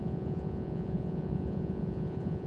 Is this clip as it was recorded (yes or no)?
no